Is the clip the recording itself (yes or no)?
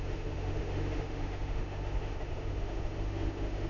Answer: no